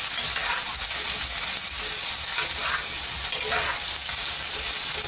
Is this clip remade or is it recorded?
recorded